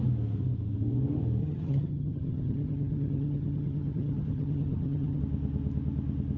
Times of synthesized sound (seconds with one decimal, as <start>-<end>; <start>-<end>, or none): 1.4-5.2